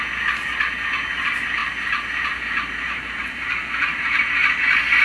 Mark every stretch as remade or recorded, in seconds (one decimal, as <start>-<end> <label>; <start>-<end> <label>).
0.0-1.6 recorded; 1.6-4.6 remade; 4.6-5.0 recorded